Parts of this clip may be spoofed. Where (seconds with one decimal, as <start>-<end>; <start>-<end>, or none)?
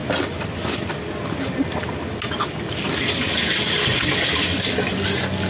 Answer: none